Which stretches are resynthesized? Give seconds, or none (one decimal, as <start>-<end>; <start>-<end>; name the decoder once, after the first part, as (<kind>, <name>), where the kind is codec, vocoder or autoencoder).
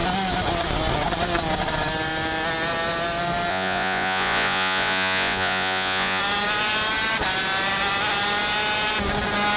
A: 3.5-6.2 (vocoder, Vocos)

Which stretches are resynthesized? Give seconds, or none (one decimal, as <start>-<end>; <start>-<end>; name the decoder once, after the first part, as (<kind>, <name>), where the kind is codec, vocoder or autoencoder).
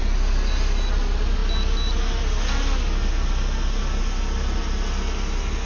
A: none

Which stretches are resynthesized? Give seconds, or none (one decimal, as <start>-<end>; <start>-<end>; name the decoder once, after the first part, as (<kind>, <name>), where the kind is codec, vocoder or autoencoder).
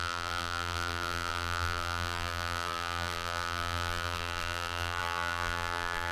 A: 0.0-6.1 (vocoder, BigVGAN v2)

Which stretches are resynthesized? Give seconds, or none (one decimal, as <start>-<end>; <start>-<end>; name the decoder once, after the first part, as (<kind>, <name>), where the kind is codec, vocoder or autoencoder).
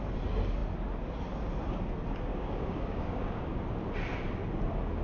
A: 2.3-3.4 (codec, DAC)